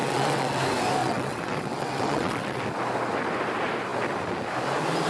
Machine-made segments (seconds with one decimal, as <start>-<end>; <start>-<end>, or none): 0.0-0.6; 1.0-2.6